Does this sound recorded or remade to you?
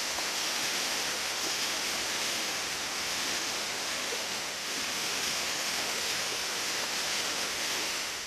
remade